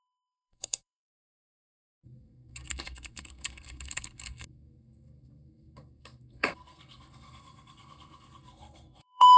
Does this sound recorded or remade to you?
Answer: remade